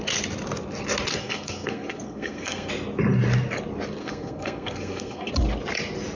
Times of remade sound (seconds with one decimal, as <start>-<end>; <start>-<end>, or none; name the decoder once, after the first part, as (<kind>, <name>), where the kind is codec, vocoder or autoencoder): 1.1-2.7 (codec, SNAC); 4.0-5.3